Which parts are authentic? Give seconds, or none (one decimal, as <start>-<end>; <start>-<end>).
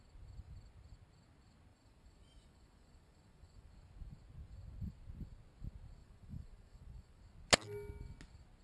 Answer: 0.0-1.7; 3.7-6.0; 7.2-8.6